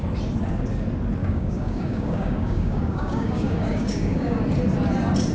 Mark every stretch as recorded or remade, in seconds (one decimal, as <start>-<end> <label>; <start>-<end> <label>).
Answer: 0.0-1.2 recorded; 1.2-4.4 remade; 4.4-5.3 recorded